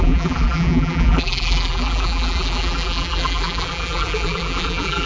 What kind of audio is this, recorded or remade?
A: remade